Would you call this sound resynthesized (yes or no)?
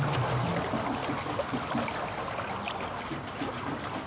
no